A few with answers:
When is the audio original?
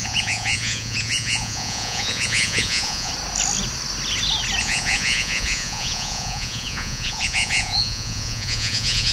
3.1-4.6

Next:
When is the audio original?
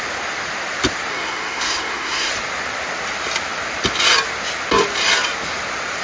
0.0-1.1; 2.3-6.0